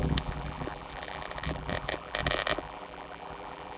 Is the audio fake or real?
fake